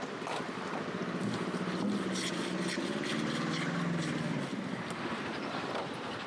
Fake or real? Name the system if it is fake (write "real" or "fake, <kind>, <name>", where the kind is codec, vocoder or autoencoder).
real